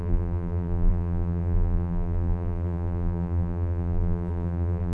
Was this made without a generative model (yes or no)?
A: no